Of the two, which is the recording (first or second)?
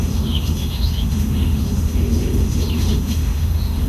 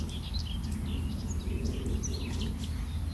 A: second